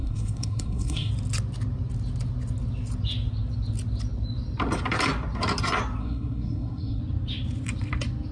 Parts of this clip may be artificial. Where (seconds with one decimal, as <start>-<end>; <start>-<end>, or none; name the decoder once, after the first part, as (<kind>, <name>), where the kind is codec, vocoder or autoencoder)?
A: 0.0-1.1 (codec, SNAC); 6.0-7.0